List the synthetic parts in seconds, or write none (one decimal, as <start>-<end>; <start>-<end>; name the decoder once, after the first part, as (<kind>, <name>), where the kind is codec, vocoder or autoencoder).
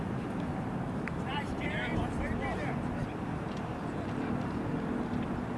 1.3-4.7 (vocoder, BigVGAN v2)